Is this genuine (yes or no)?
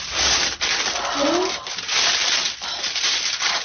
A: yes